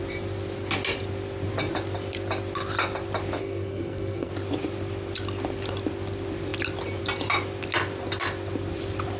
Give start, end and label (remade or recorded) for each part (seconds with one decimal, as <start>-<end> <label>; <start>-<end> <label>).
0.0-3.4 recorded; 3.4-4.3 remade; 4.3-9.2 recorded